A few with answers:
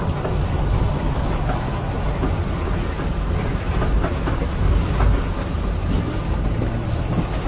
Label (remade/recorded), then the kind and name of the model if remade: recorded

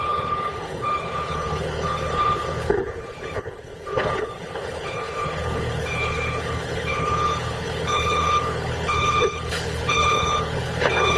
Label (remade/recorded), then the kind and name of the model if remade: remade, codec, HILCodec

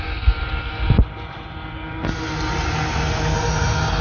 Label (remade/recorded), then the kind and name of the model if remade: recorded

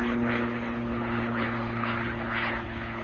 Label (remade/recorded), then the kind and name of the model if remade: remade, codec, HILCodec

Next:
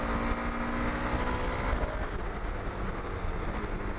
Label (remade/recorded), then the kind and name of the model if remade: recorded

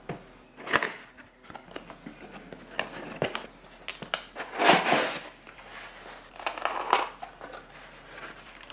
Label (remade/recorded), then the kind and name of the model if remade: recorded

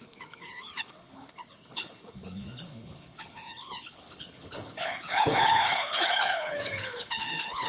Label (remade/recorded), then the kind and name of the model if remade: remade, codec, HILCodec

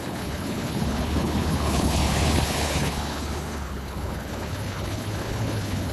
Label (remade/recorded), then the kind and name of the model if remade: remade, codec, HILCodec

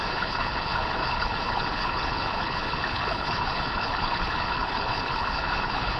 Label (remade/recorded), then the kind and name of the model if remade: remade, codec, HILCodec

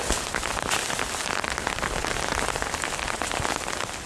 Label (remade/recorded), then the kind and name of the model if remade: recorded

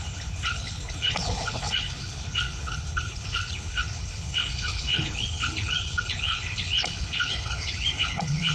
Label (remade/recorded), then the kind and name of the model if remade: remade, codec, HILCodec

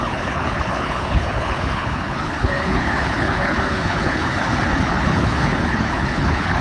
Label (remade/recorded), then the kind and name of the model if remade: remade, codec, HILCodec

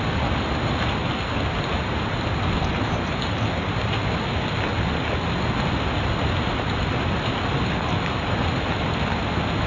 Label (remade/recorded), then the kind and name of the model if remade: recorded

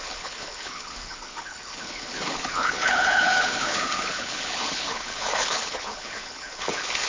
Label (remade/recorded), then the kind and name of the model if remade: remade, codec, HILCodec